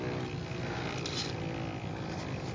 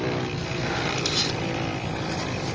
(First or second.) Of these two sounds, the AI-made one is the second